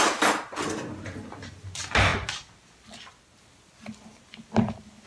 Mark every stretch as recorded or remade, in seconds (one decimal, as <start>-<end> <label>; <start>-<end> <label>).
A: 0.0-5.1 recorded